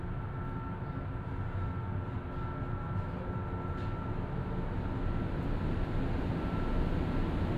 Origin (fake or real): real